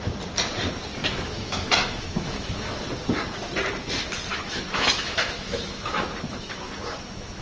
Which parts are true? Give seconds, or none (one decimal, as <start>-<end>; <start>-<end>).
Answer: 0.0-1.0; 2.7-4.3